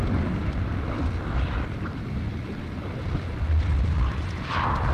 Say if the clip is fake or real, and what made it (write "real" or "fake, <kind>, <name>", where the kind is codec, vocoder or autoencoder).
fake, vocoder, BigVGAN v2